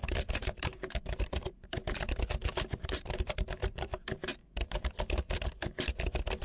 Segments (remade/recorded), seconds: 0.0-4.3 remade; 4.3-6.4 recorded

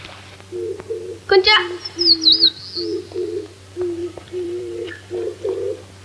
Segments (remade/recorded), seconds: 0.0-4.0 recorded; 4.0-5.1 remade; 5.1-6.0 recorded

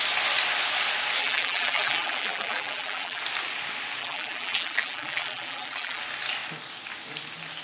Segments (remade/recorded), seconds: 0.0-1.2 recorded; 1.2-3.2 remade; 3.2-4.0 recorded; 4.0-6.0 remade; 6.0-7.6 recorded

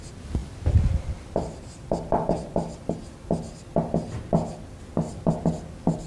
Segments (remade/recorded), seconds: 0.0-0.4 recorded; 0.4-3.0 remade; 3.0-6.1 recorded